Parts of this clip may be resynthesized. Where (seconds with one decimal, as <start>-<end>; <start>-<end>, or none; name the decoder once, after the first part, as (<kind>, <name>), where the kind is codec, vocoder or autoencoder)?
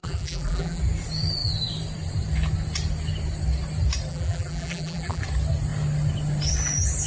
0.0-0.8 (vocoder, BigVGAN v2); 4.1-5.2